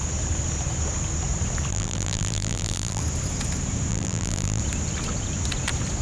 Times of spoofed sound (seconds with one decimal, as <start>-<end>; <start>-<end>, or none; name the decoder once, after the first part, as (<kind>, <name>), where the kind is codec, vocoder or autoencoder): 1.7-3.0 (vocoder, BigVGAN v2); 3.9-4.6